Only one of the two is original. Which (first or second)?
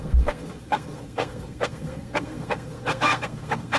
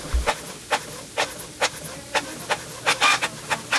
second